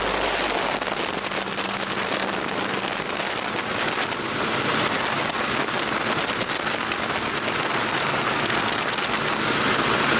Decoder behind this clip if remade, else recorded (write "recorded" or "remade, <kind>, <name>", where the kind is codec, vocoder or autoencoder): recorded